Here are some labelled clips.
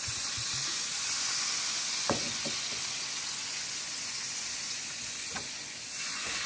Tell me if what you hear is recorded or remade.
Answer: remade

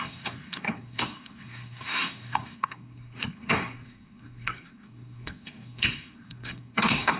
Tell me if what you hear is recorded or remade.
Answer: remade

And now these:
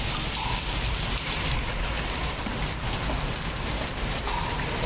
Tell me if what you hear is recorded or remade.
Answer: recorded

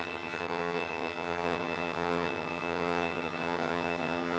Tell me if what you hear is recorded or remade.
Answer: remade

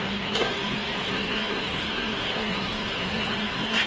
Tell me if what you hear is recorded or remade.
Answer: remade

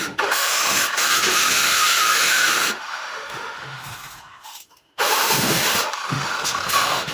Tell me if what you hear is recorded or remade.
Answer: remade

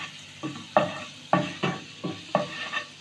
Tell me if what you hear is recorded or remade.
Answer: recorded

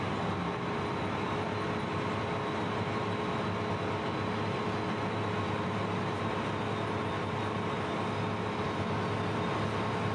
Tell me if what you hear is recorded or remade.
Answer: recorded